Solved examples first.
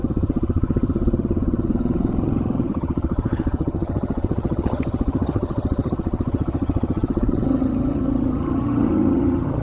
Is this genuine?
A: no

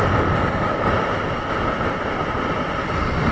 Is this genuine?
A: yes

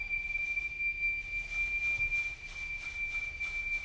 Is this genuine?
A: yes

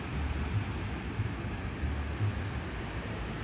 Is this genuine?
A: yes